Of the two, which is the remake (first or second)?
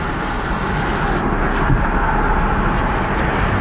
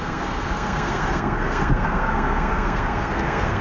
second